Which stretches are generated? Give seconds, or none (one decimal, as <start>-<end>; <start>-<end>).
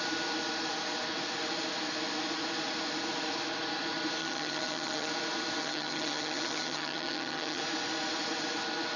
4.2-5.1; 5.6-7.6